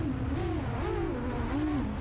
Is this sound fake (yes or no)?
no